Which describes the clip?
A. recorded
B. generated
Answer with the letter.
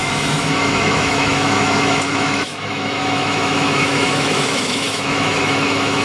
B